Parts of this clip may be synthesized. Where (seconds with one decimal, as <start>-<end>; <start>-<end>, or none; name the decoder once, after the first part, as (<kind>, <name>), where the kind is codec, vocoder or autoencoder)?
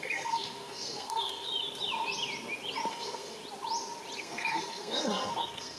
0.0-1.5 (codec, SNAC); 2.9-3.4; 4.2-5.8